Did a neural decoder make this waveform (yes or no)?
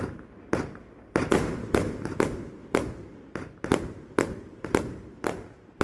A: no